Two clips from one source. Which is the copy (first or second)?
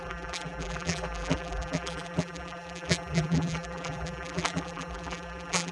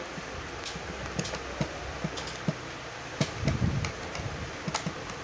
first